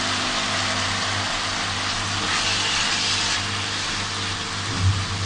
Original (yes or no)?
yes